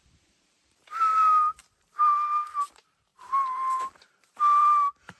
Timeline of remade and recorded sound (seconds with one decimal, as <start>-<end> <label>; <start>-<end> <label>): 0.0-1.6 remade; 1.6-2.7 recorded; 2.7-5.2 remade